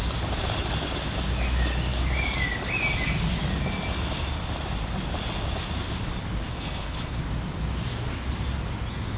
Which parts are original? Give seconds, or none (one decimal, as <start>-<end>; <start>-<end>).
0.0-6.5; 7.2-9.2